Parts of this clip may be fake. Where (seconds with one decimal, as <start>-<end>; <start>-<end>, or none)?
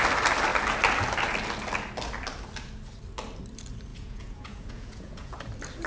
3.9-5.4